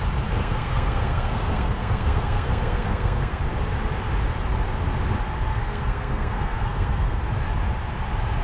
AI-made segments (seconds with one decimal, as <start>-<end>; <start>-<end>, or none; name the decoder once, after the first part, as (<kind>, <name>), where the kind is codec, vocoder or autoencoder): 0.4-3.4 (codec, SNAC); 5.5-7.2